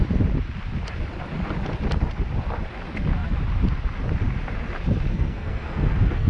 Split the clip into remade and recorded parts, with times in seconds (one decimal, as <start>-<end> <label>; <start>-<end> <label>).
0.0-5.1 recorded; 5.1-6.3 remade